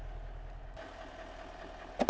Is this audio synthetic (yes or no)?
no